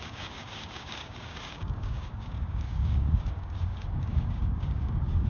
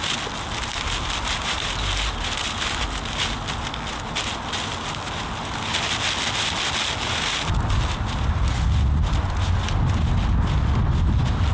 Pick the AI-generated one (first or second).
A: first